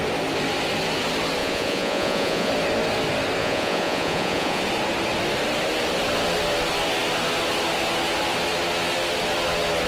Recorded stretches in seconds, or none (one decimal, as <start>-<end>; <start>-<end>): 0.0-1.4; 2.5-3.4; 4.6-9.9